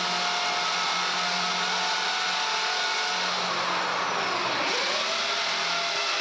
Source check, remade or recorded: recorded